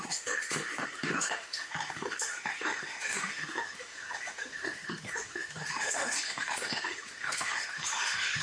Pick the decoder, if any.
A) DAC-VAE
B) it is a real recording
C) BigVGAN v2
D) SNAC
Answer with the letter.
A